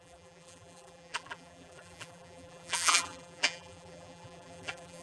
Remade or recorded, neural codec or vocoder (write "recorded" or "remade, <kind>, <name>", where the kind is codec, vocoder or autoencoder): remade, vocoder, BigVGAN v2